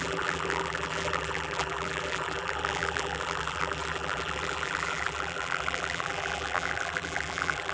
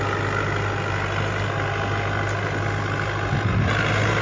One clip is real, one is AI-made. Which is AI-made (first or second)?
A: first